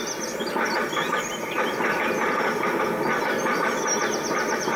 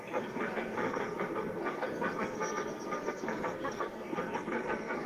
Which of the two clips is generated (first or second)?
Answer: second